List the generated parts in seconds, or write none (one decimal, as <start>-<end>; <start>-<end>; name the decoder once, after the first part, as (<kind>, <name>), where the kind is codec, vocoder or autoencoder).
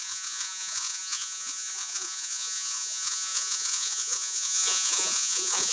0.0-5.7 (vocoder, Vocos)